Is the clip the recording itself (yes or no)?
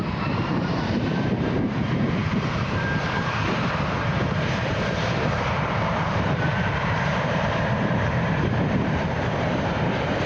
no